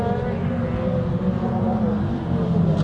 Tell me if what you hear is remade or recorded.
recorded